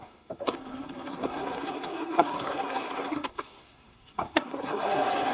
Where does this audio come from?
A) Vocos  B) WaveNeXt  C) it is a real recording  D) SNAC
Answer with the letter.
D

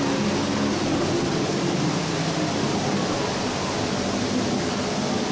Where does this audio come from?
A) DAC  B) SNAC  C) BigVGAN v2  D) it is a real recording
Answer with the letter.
D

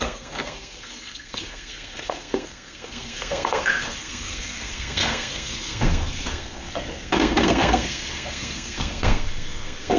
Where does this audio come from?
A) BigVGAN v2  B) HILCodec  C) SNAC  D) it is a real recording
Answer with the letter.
C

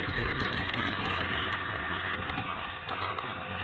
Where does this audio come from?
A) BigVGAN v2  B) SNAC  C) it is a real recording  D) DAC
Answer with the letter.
B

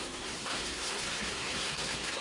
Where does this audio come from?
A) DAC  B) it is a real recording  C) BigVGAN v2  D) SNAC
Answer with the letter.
D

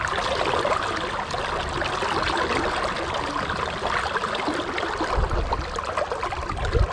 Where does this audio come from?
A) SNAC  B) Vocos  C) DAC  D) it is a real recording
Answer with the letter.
D